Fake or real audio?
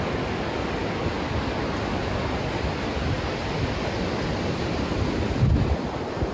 real